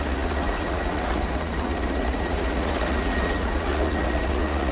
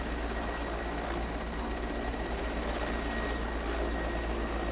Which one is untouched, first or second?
second